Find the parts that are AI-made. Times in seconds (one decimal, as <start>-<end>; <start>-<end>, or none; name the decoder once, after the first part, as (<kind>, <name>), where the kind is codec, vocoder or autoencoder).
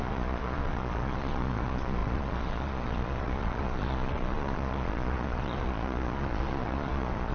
0.0-7.3 (vocoder, Vocos)